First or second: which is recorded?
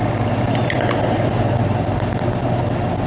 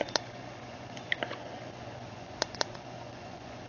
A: first